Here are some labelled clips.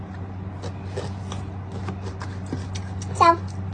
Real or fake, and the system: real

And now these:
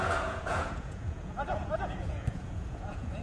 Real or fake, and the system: fake, vocoder, Vocos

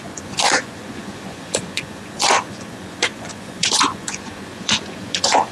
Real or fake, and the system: fake, vocoder, Vocos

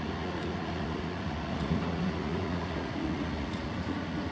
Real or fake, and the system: fake, vocoder, Vocos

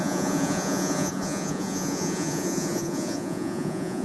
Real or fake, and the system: fake, vocoder, Vocos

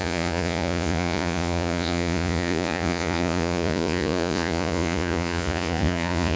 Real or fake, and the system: fake, vocoder, Vocos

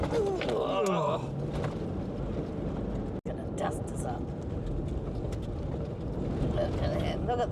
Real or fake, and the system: real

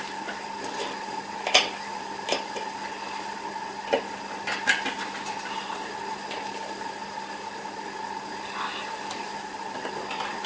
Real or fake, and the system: real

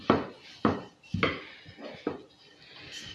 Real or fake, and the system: real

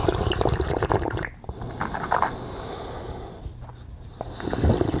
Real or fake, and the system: real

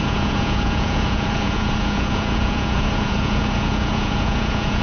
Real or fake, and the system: fake, vocoder, Vocos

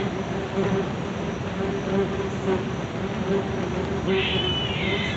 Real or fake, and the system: real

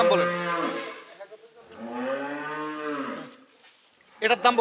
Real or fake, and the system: real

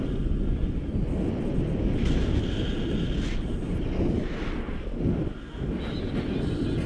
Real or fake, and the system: real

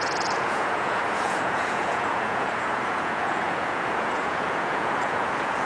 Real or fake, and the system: fake, vocoder, Vocos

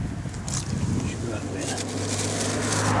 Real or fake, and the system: real